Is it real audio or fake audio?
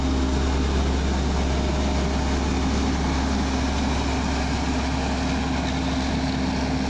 real